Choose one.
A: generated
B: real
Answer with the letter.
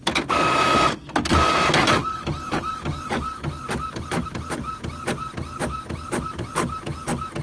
B